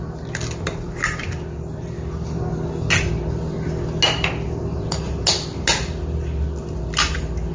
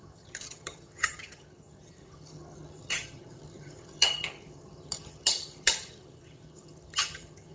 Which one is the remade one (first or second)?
second